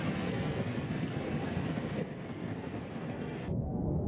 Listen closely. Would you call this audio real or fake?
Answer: fake